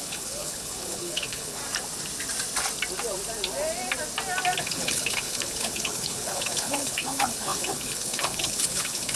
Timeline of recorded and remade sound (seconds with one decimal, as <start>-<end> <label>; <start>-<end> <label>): 0.0-1.6 remade; 1.6-4.6 recorded; 4.6-9.2 remade